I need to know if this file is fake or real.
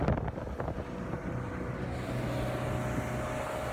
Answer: real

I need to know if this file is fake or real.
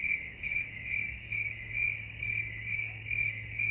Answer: fake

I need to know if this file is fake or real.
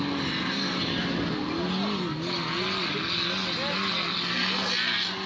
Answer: real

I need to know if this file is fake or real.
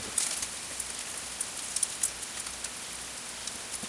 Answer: real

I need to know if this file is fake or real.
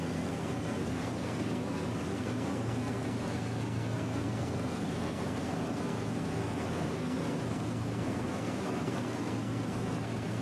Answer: fake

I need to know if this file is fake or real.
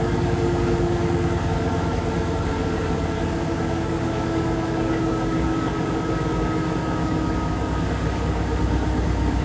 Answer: fake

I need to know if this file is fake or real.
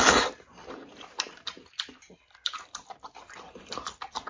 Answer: real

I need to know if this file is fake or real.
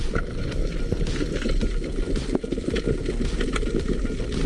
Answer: real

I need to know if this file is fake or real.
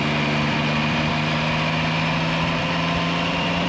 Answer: real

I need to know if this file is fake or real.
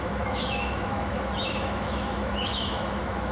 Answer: fake